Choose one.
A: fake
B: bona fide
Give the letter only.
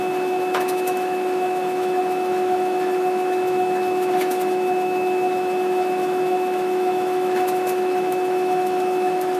A